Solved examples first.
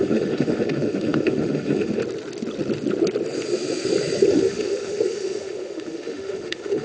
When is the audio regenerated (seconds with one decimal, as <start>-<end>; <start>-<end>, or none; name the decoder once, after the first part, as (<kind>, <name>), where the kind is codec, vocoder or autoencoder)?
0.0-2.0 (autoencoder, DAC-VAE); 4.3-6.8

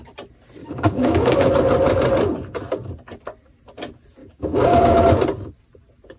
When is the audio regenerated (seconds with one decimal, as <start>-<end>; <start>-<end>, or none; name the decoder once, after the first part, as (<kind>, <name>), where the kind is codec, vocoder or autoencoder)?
0.6-1.5 (codec, DAC); 4.2-5.0

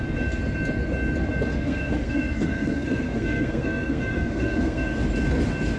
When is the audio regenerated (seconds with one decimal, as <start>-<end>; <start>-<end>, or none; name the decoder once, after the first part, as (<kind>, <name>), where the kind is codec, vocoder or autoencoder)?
1.5-5.0 (codec, SNAC)